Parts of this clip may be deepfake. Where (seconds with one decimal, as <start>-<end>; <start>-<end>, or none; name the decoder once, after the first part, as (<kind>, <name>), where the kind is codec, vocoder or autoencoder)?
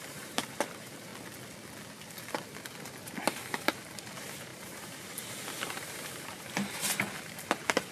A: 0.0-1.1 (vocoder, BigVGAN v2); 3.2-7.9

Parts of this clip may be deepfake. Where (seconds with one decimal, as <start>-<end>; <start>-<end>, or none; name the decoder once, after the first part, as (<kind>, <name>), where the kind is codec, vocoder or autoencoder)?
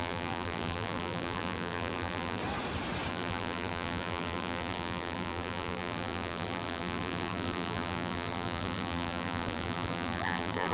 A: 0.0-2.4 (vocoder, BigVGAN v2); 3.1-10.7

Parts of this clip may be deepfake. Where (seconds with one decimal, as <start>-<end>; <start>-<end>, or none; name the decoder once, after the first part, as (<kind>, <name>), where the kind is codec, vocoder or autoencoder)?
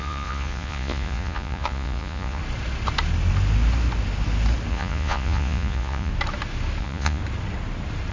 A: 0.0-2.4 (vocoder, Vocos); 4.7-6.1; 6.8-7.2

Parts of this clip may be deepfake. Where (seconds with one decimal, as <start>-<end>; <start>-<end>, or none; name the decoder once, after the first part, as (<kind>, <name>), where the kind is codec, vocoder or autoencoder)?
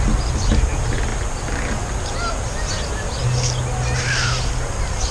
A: none